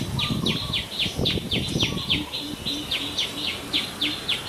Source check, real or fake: real